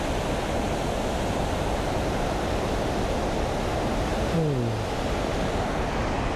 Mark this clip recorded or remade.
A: recorded